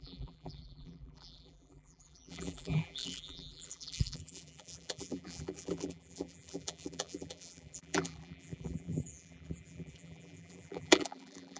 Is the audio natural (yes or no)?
no